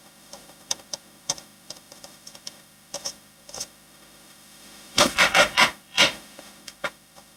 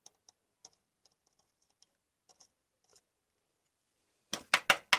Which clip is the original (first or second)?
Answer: second